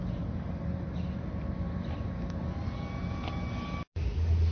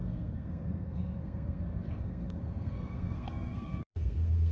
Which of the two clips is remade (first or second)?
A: second